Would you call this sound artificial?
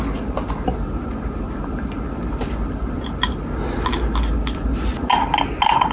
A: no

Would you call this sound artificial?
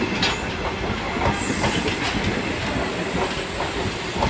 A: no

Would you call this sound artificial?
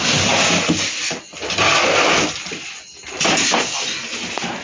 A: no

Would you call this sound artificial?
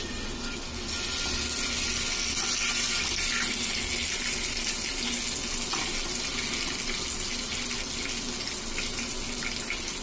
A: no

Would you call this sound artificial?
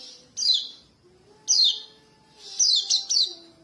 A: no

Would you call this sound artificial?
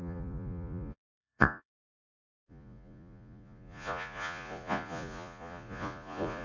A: yes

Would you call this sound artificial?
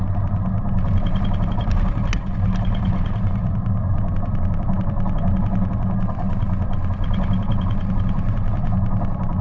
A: no